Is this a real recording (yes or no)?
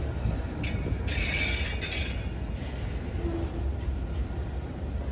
yes